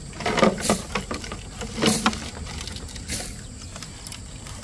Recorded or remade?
recorded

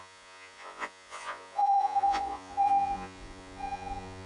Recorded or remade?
remade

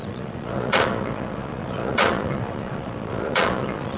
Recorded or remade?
remade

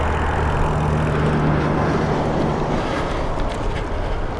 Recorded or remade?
recorded